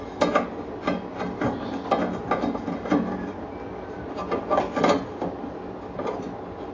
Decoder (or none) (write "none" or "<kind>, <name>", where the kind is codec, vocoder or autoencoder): none